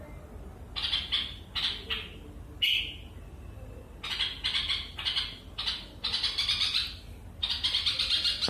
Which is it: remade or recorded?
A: recorded